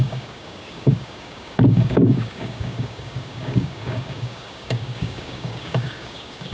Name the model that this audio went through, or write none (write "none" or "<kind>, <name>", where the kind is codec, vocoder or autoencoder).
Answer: codec, DAC